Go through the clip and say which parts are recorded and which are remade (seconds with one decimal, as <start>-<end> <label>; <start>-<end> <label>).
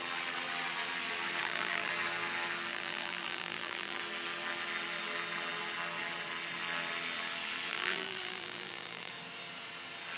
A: 0.0-1.4 recorded; 1.4-1.9 remade; 1.9-2.7 recorded; 2.7-4.0 remade; 4.0-7.7 recorded; 7.7-9.1 remade; 9.1-10.2 recorded